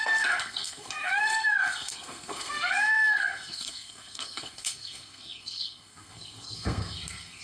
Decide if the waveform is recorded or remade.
remade